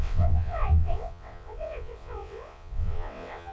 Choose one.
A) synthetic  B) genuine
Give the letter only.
A